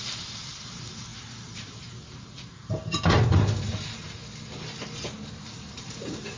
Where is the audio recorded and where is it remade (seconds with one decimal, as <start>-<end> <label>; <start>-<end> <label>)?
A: 0.0-4.2 remade; 4.2-5.3 recorded; 5.3-6.4 remade